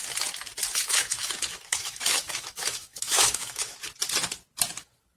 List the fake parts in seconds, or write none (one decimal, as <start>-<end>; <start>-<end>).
0.7-3.8